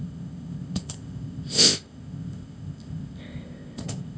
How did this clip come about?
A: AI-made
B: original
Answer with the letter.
A